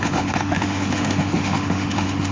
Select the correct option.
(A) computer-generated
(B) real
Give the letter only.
A